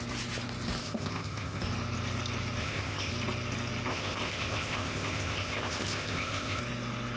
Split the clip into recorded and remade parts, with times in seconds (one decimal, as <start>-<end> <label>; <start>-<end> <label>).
0.0-0.8 recorded; 0.8-1.6 remade; 1.6-2.6 recorded; 2.6-3.1 remade; 3.1-3.9 recorded; 3.9-6.6 remade; 6.6-7.2 recorded